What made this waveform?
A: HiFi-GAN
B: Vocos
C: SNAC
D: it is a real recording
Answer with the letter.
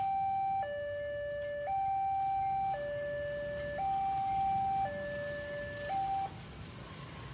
D